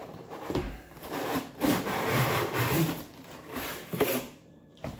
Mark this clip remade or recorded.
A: remade